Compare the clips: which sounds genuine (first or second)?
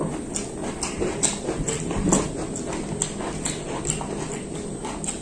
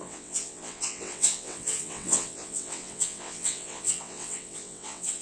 first